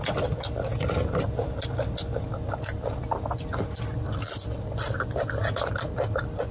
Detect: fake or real real